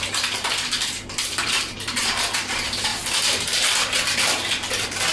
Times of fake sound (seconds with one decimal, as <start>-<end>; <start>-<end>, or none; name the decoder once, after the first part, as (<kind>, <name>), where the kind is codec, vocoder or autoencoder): 0.0-5.1 (vocoder, BigVGAN v2)